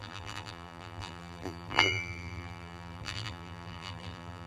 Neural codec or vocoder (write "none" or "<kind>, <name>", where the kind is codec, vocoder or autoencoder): vocoder, BigVGAN v2